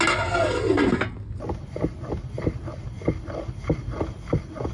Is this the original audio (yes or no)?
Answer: yes